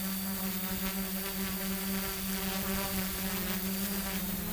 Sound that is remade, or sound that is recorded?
recorded